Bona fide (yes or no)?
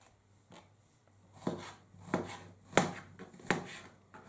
yes